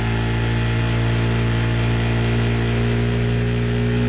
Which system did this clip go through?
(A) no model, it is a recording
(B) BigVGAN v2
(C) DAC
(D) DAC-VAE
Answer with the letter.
A